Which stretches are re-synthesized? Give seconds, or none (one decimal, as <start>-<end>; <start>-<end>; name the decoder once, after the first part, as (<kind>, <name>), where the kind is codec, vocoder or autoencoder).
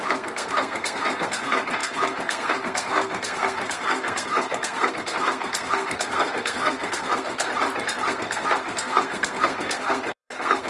0.0-7.5 (codec, SNAC); 8.1-10.7